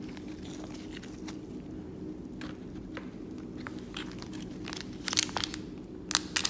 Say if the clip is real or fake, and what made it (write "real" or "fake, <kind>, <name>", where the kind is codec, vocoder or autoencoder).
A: real